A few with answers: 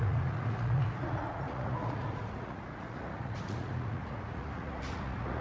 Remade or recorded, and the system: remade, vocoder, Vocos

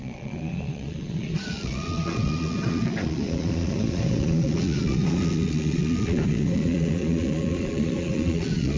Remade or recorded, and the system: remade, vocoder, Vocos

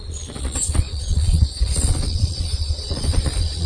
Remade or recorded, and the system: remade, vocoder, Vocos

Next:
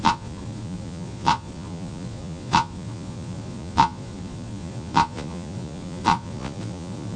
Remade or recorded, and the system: remade, vocoder, Vocos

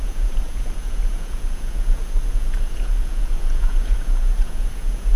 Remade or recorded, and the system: remade, vocoder, Vocos